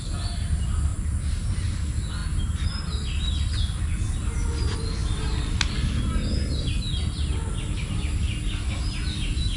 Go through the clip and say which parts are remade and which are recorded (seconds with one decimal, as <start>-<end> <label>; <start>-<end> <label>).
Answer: 0.0-9.6 recorded